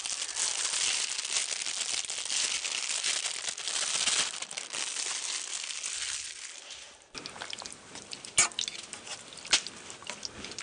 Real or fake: real